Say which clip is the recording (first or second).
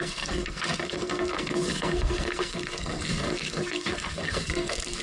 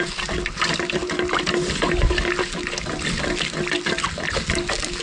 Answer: second